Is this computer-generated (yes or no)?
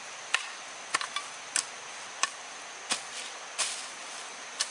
no